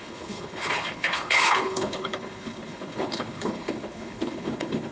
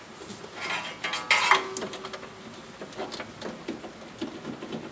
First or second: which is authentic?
second